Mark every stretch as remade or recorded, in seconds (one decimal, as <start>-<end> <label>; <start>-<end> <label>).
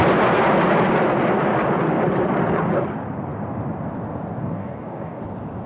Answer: 0.0-4.4 recorded; 4.4-5.2 remade; 5.2-5.7 recorded